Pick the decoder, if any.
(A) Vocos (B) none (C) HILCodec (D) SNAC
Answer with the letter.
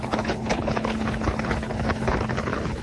C